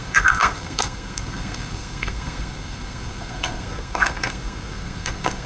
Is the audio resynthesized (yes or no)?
yes